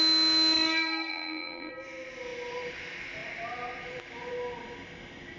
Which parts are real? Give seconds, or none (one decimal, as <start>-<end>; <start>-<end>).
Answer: 0.0-1.1; 1.7-5.4

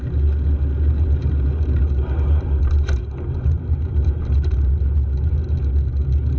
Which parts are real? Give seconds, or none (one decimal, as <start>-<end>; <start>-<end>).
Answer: 0.0-0.9; 4.7-6.4